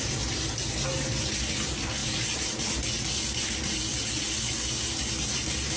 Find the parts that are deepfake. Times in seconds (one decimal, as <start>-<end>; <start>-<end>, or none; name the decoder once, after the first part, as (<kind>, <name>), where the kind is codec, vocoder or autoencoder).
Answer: none